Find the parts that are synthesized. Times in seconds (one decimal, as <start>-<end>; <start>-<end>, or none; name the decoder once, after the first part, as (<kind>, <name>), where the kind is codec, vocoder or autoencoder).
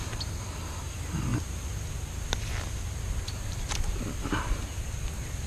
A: none